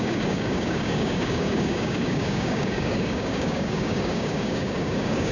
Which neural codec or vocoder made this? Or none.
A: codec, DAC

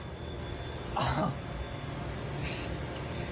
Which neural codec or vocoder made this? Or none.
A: none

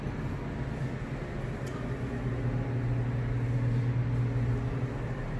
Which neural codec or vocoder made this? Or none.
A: none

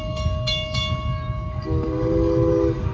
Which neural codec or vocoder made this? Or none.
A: codec, DAC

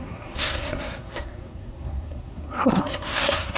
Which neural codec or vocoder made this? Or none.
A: codec, SNAC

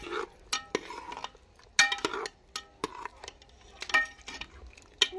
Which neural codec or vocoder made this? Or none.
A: none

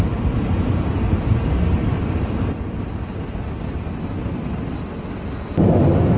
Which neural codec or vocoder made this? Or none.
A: none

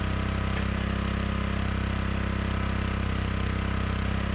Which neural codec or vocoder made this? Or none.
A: none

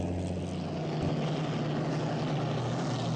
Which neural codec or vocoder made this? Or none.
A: none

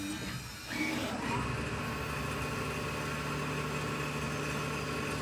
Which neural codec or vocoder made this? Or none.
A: none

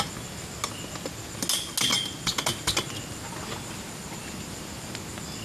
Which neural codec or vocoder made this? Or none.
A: none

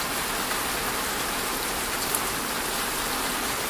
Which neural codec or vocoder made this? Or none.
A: none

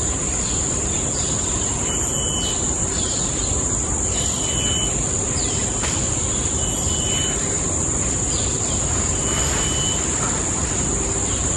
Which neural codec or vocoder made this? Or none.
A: none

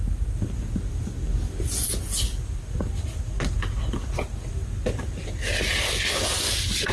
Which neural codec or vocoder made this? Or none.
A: none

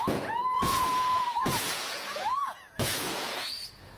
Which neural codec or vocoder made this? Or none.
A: vocoder, Vocos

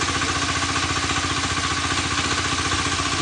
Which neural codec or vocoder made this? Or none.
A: none